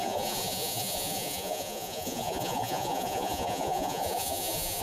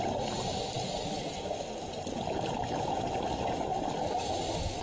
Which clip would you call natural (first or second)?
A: second